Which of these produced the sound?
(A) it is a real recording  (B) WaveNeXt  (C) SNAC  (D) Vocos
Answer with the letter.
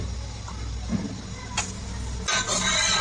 A